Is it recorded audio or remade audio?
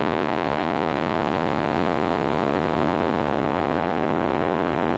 remade